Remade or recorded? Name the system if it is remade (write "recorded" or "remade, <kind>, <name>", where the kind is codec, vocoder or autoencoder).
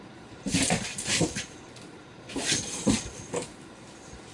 remade, vocoder, BigVGAN v2